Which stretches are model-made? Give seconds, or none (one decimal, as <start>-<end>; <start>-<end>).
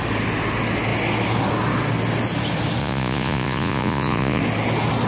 2.8-4.4